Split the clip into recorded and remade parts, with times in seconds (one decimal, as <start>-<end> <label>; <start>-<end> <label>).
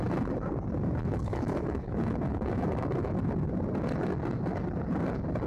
0.0-1.1 recorded; 1.1-3.2 remade; 3.2-5.5 recorded